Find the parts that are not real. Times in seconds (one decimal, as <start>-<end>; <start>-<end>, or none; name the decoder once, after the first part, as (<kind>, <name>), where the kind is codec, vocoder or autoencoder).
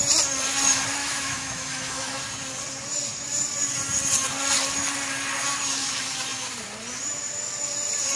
1.0-2.2 (autoencoder, DAC-VAE)